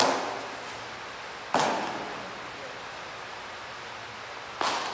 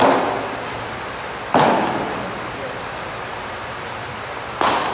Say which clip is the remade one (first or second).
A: second